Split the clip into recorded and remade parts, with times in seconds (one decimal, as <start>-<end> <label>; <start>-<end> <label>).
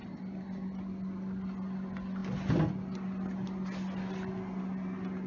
0.0-5.3 recorded